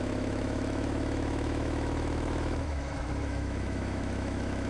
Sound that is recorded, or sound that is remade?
remade